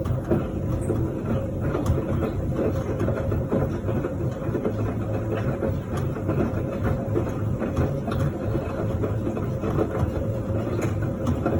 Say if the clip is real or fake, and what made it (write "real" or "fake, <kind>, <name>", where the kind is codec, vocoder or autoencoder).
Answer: real